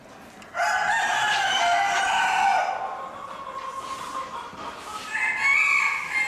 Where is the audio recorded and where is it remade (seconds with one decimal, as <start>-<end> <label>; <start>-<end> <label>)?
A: 0.0-6.3 recorded